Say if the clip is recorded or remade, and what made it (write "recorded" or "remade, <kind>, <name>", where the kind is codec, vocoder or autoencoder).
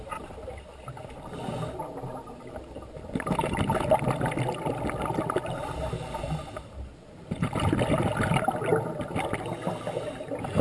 recorded